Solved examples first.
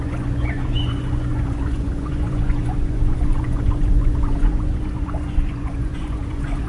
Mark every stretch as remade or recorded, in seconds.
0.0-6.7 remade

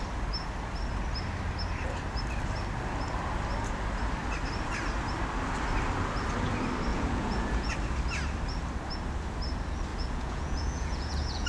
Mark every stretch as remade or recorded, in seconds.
0.0-6.9 recorded; 6.9-7.7 remade; 7.7-9.9 recorded; 9.9-11.5 remade

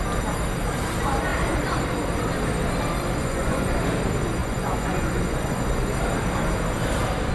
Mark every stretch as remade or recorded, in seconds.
0.0-3.2 recorded; 3.2-3.8 remade; 3.8-4.4 recorded; 4.4-5.9 remade; 5.9-7.3 recorded